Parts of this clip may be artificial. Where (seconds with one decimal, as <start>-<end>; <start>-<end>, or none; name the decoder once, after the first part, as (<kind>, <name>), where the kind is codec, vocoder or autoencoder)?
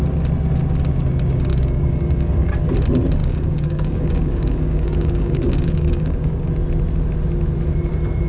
1.5-2.5 (codec, DAC); 3.2-6.5